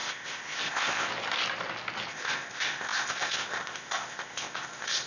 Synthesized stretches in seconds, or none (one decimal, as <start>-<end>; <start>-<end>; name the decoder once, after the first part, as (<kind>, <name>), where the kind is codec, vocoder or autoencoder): 0.0-1.1 (codec, ZipCodec); 2.1-5.1